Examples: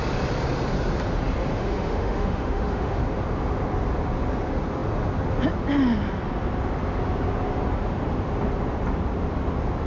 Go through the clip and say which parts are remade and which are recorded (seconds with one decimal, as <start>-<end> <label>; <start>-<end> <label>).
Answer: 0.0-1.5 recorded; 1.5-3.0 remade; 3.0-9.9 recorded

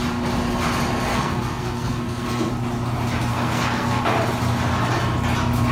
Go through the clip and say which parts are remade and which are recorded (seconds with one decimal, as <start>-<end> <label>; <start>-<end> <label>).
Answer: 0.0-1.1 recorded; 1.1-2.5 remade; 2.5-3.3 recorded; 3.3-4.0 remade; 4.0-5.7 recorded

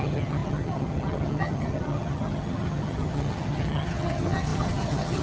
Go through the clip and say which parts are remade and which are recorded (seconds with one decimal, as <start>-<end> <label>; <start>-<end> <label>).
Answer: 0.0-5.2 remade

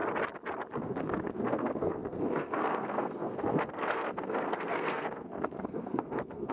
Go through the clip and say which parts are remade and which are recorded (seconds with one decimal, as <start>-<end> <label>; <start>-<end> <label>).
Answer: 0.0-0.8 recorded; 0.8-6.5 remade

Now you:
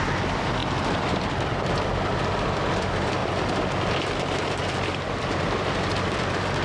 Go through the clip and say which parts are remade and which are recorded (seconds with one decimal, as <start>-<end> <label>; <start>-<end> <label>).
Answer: 0.0-6.6 remade

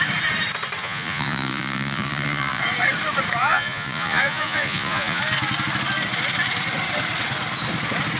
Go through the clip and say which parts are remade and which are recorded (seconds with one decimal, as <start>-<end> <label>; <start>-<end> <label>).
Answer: 0.0-0.8 recorded; 0.8-2.6 remade; 2.6-3.4 recorded; 3.4-5.2 remade; 5.2-8.2 recorded

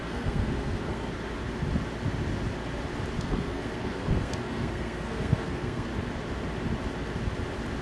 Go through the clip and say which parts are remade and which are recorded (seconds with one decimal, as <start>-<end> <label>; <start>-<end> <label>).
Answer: 0.0-1.1 remade; 1.1-3.2 recorded; 3.2-5.9 remade; 5.9-7.8 recorded

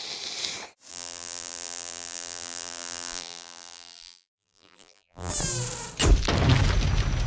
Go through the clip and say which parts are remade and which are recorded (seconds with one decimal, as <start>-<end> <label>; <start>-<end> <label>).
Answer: 0.0-0.9 recorded; 0.9-5.3 remade; 5.3-7.3 recorded